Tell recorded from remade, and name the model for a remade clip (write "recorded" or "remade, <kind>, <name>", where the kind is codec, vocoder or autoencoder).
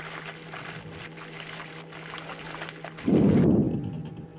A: recorded